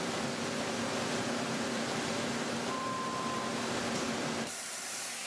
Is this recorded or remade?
remade